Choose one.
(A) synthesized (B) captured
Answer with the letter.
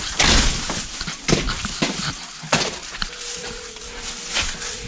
A